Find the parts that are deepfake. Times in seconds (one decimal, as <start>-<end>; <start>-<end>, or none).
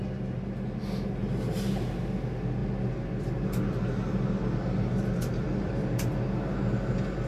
1.2-1.9